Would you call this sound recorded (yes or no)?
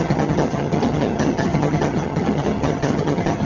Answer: no